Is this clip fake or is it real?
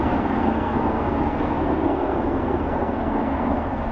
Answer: fake